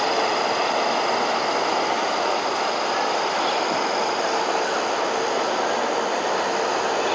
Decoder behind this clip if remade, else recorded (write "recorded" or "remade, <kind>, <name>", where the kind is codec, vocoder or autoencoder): recorded